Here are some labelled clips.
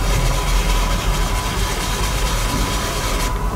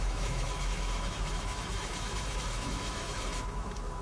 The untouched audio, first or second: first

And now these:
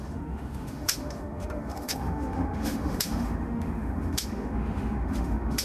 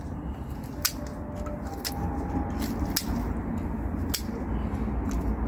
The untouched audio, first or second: second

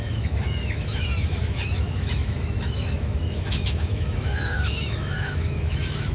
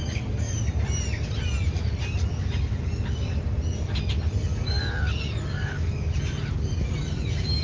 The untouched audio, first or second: second